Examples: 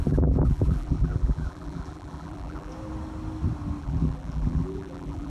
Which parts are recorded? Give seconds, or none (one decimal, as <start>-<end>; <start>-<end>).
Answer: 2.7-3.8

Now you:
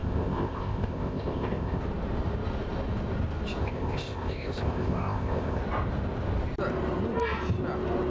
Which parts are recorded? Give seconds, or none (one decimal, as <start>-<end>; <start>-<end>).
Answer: 1.8-3.6; 5.6-8.1

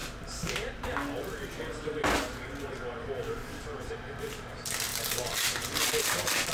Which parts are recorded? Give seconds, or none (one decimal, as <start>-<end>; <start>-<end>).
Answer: 0.0-6.5